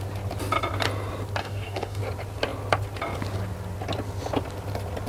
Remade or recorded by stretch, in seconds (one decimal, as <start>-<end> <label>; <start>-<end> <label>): 0.0-1.4 recorded; 1.4-2.0 remade; 2.0-5.1 recorded